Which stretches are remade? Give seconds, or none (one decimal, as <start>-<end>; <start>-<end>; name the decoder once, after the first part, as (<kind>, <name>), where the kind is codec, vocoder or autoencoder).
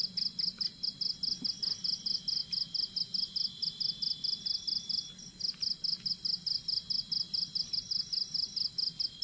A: none